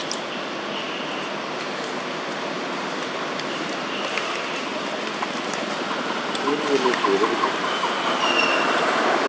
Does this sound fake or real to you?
real